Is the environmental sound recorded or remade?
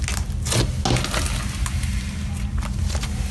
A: recorded